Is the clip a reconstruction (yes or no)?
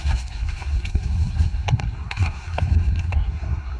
yes